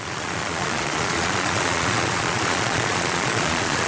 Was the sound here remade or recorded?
remade